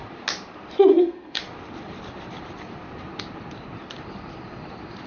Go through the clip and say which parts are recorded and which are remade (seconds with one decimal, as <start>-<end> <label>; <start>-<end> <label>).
0.0-0.9 recorded; 0.9-1.4 remade; 1.4-5.1 recorded